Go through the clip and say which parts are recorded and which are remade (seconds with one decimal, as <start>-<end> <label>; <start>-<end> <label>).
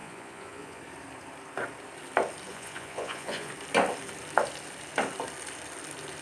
0.0-0.8 remade; 0.8-2.5 recorded; 2.5-3.5 remade; 3.5-6.2 recorded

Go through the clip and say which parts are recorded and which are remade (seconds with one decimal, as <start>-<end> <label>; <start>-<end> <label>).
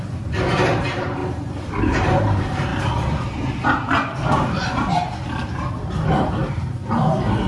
0.0-1.2 remade; 1.2-1.8 recorded; 1.8-2.7 remade; 2.7-5.9 recorded; 5.9-6.8 remade; 6.8-7.5 recorded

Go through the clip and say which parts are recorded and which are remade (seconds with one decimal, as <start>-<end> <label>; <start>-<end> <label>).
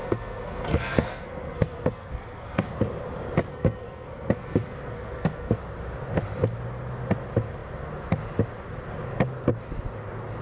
0.0-2.7 remade; 2.7-3.5 recorded; 3.5-5.6 remade; 5.6-10.4 recorded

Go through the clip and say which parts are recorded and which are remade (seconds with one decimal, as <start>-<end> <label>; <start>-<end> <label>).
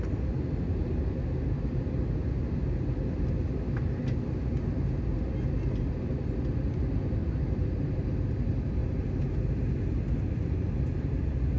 0.0-7.2 recorded; 7.2-7.9 remade; 7.9-8.8 recorded; 8.8-9.4 remade; 9.4-11.6 recorded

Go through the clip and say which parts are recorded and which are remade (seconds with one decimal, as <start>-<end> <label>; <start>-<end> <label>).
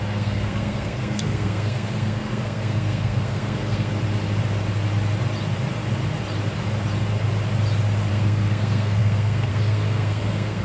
0.0-3.9 remade; 3.9-8.1 recorded; 8.1-10.6 remade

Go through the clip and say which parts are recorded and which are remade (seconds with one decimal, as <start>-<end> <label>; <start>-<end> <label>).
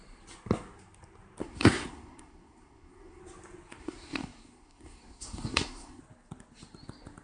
0.0-1.4 recorded; 1.4-3.2 remade; 3.2-3.8 recorded; 3.8-6.0 remade; 6.0-7.2 recorded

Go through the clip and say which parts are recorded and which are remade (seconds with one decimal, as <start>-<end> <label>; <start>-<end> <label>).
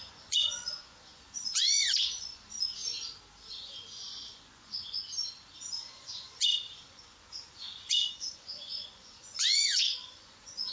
0.0-2.8 remade; 2.8-3.4 recorded; 3.4-5.0 remade; 5.0-5.6 recorded; 5.6-10.7 remade